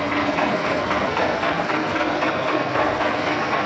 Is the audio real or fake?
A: fake